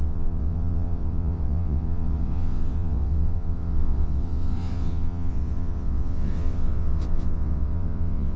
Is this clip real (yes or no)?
no